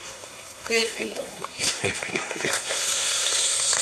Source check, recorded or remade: remade